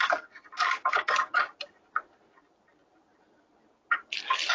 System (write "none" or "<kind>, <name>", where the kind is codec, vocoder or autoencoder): none